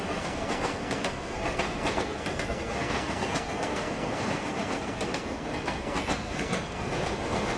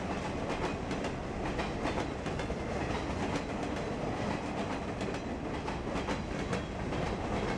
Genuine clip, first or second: second